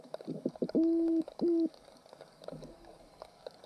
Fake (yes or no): yes